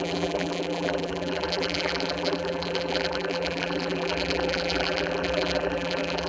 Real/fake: fake